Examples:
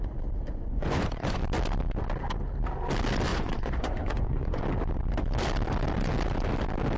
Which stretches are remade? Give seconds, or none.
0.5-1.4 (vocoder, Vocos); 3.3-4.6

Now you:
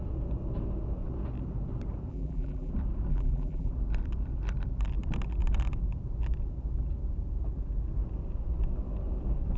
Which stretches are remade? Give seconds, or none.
2.1-2.7 (vocoder, BigVGAN v2); 3.1-3.7

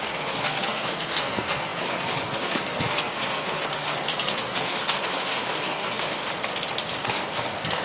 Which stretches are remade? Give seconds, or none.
0.0-6.2 (codec, SNAC); 7.0-7.8

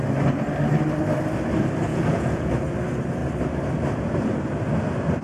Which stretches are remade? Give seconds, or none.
1.9-2.5 (vocoder, Vocos)

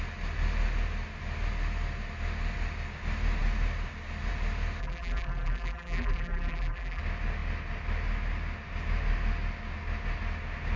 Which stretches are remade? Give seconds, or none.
4.8-7.0 (vocoder, BigVGAN v2)

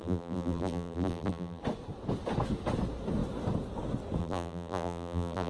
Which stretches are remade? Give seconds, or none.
0.0-1.6 (vocoder, BigVGAN v2); 4.2-5.5

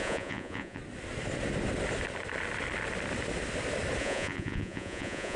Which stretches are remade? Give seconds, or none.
0.0-0.8 (vocoder, Vocos); 4.0-5.4

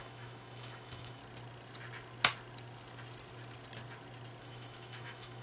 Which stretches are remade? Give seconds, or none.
0.0-1.2 (autoencoder, DAC-VAE); 4.4-5.4